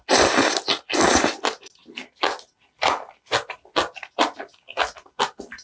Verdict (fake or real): real